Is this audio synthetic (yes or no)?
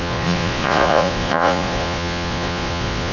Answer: yes